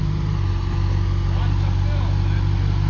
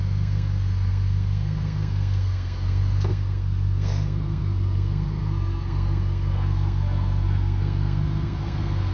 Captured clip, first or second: first